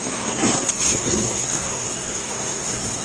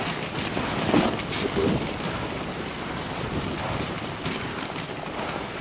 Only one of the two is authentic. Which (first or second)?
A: second